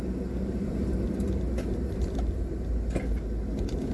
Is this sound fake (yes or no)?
no